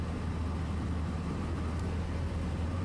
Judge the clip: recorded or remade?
recorded